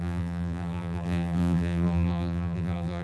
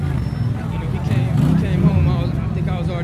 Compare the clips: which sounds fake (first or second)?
first